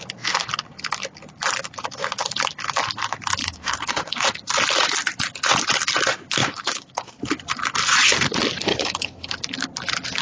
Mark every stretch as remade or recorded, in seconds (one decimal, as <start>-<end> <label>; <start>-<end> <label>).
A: 0.0-3.4 recorded; 3.4-4.2 remade; 4.2-6.4 recorded; 6.4-7.2 remade; 7.2-8.7 recorded; 8.7-9.3 remade; 9.3-10.2 recorded